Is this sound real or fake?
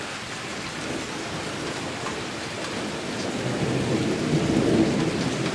real